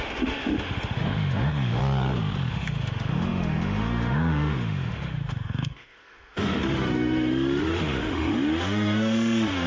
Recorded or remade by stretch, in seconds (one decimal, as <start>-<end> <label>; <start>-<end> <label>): 0.0-1.8 remade; 1.8-2.5 recorded; 2.5-9.7 remade